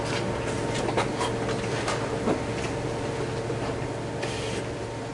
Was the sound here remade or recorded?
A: recorded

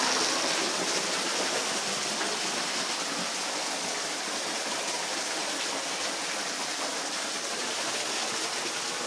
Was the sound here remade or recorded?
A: recorded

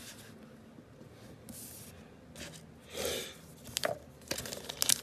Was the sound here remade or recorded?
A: recorded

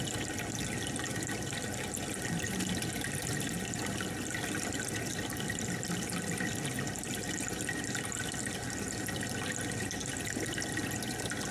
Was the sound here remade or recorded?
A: recorded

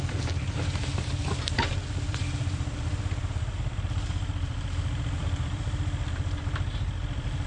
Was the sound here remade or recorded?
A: remade